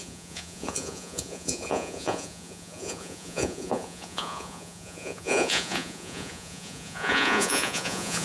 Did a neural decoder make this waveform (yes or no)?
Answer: yes